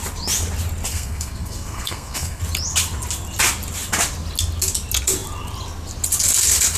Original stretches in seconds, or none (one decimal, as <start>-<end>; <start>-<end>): 0.0-0.9; 2.4-6.8